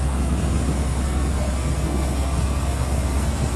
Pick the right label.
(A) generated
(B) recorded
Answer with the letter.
A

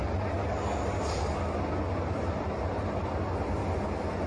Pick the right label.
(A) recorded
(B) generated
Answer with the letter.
A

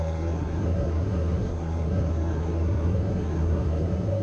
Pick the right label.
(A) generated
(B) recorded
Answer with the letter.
A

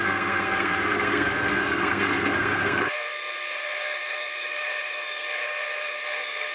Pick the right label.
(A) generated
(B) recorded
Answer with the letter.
A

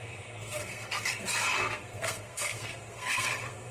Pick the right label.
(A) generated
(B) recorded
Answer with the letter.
A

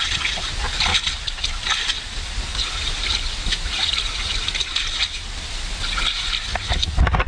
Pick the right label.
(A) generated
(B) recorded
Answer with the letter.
B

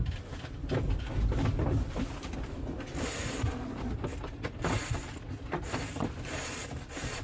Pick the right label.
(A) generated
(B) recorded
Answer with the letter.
B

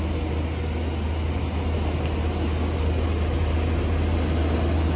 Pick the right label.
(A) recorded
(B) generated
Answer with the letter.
A